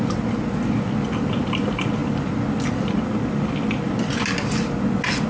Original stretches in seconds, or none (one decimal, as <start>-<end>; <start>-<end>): 0.0-5.3